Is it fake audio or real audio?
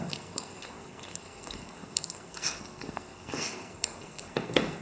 fake